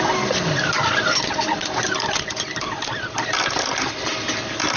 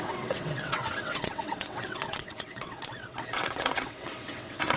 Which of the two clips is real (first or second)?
first